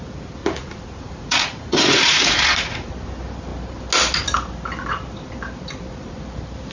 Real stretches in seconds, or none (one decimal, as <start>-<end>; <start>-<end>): 0.0-0.4; 2.9-6.7